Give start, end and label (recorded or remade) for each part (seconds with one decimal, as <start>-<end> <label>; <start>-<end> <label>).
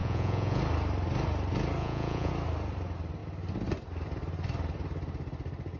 0.0-0.6 remade; 0.6-1.8 recorded; 1.8-2.3 remade; 2.3-5.8 recorded